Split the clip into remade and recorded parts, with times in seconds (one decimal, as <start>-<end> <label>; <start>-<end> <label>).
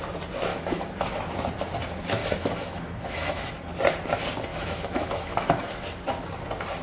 0.0-0.5 recorded; 0.5-1.2 remade; 1.2-2.2 recorded; 2.2-3.5 remade; 3.5-4.5 recorded; 4.5-5.7 remade; 5.7-6.8 recorded